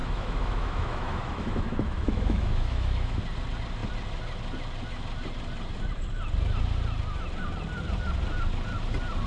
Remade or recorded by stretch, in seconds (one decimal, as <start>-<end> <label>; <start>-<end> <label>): 0.0-3.2 remade; 3.2-9.3 recorded